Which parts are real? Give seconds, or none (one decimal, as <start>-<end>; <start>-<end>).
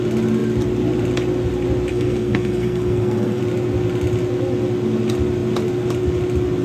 0.0-1.9; 3.4-6.6